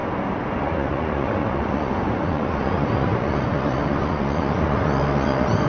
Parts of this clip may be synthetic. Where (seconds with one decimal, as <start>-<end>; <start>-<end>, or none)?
0.6-5.7

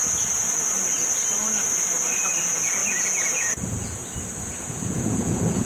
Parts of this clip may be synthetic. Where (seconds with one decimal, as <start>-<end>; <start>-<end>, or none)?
2.4-4.0; 4.6-5.7

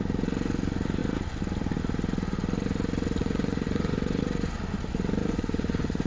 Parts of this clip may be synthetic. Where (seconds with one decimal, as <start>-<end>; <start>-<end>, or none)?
3.2-4.6; 5.2-6.1